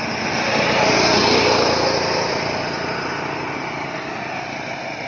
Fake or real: real